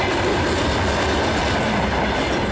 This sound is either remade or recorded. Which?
recorded